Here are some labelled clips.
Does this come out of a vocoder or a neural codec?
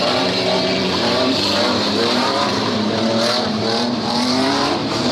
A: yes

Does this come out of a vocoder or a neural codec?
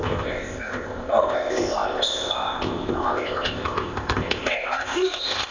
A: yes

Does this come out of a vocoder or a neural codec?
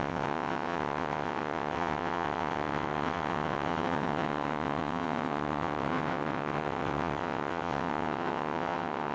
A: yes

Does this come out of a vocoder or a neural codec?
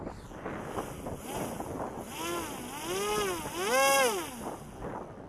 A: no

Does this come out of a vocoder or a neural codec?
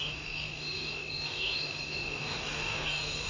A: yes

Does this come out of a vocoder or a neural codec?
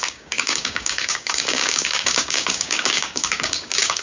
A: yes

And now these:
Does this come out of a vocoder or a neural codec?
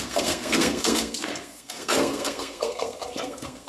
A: yes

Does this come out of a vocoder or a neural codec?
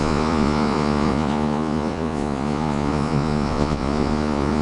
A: yes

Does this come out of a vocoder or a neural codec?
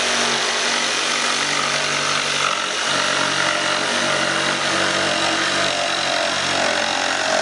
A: no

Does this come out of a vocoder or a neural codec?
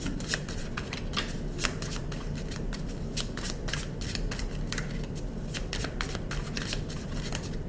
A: yes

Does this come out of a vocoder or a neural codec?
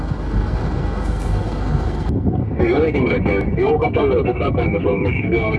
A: yes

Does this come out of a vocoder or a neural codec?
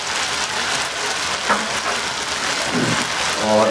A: no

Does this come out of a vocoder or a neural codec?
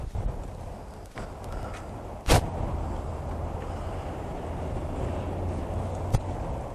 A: no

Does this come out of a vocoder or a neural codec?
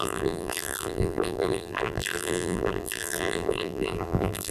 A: yes